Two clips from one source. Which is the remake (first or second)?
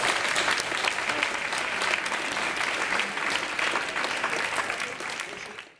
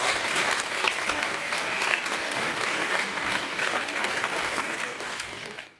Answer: second